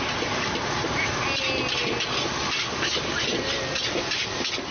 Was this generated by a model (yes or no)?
no